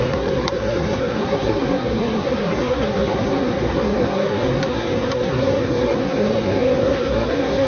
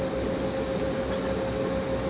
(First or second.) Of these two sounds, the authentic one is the second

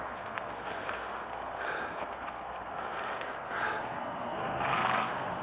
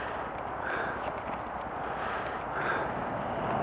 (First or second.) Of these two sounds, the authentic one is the second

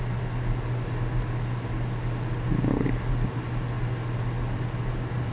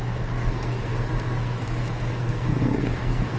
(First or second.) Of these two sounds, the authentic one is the first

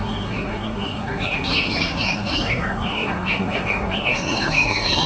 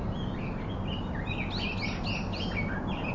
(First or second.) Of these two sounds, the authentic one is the second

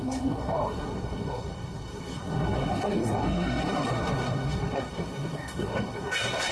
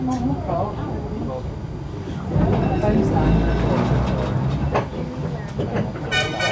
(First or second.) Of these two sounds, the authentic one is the second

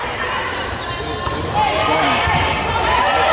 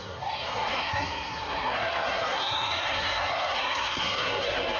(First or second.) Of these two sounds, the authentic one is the first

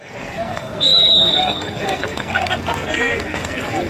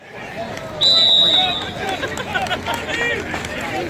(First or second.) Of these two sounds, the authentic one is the second